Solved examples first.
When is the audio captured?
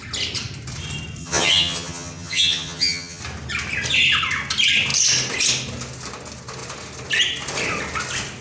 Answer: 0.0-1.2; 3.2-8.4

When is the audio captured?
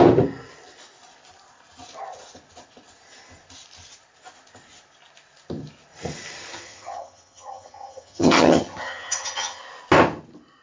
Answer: 0.0-6.5; 9.6-10.6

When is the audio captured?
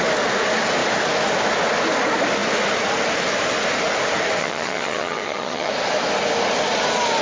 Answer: 0.0-4.4; 5.7-7.2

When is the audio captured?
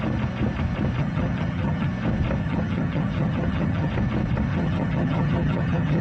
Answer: 0.0-1.0; 1.9-2.4; 3.9-4.5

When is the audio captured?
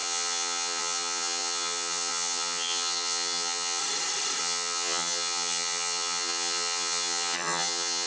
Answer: 3.8-4.4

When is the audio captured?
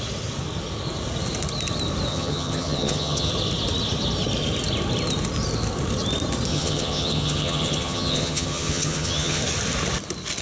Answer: 0.0-2.1; 3.3-6.5; 9.4-10.4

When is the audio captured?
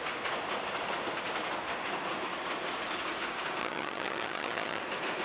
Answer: 0.0-3.6; 4.8-5.2